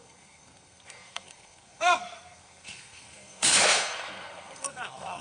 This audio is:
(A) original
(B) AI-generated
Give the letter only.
B